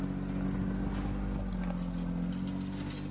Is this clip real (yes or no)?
yes